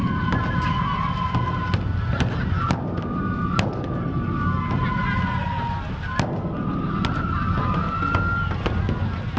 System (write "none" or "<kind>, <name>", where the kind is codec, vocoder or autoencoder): none